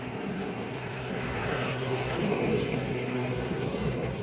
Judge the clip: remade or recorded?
remade